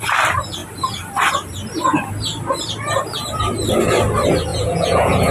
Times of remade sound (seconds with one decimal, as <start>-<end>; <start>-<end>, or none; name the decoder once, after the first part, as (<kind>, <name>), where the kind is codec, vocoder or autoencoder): 4.5-5.3 (vocoder, Vocos)